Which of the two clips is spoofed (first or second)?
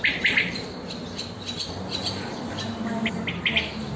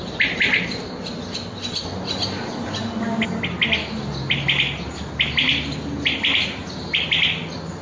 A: first